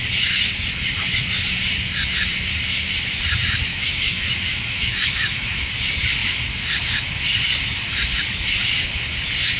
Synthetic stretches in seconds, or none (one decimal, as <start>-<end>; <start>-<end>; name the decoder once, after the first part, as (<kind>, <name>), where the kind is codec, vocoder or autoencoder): 3.7-5.6 (autoencoder, DAC-VAE)